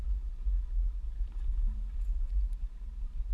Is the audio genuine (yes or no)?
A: yes